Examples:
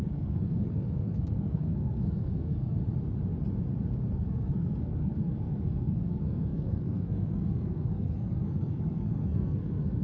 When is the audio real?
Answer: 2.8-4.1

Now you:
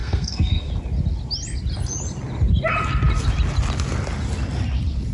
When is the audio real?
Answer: 0.7-5.1